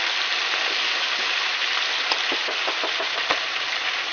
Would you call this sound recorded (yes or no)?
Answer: yes